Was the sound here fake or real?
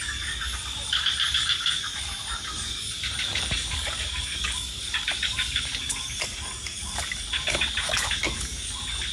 fake